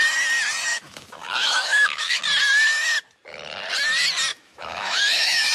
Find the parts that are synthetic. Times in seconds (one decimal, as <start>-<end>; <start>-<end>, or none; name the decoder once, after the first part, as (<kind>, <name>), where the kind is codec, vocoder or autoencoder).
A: 0.7-2.2 (autoencoder, DAC-VAE); 4.3-5.5